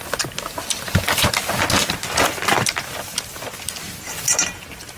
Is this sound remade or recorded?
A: recorded